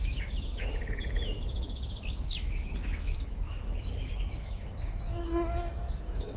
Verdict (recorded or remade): remade